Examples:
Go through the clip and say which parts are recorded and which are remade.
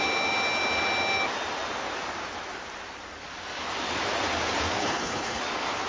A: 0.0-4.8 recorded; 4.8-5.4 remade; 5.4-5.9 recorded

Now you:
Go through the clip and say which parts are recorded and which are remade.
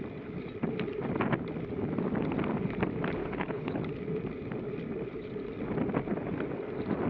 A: 0.0-3.2 recorded; 3.2-3.8 remade; 3.8-7.1 recorded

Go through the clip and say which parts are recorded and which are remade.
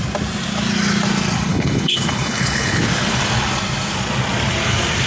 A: 0.0-1.5 recorded; 1.5-2.8 remade; 2.8-5.1 recorded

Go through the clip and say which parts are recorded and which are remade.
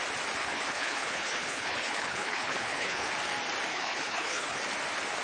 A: 0.0-0.4 recorded; 0.4-3.1 remade; 3.1-3.7 recorded; 3.7-4.6 remade; 4.6-5.2 recorded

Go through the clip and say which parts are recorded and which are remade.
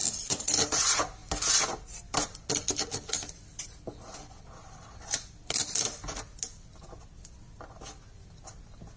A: 0.0-9.0 recorded